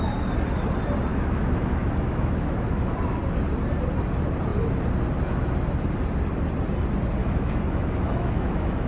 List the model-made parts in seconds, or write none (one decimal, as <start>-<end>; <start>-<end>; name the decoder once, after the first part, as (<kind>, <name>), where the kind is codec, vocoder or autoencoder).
1.1-3.2 (autoencoder, DAC-VAE); 7.2-8.9